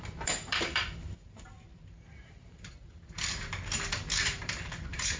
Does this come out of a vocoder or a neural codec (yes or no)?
yes